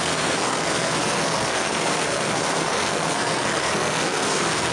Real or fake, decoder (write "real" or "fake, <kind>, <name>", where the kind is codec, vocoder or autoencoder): fake, codec, SNAC